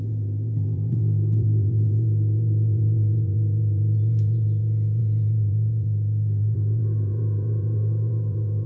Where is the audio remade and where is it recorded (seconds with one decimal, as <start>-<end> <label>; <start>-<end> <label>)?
0.0-8.7 remade